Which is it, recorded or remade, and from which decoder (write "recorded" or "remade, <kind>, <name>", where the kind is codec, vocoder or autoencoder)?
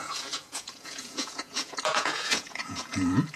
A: remade, vocoder, Vocos